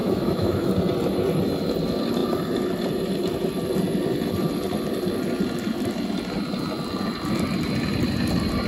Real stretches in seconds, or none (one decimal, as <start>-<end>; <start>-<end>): 0.7-8.7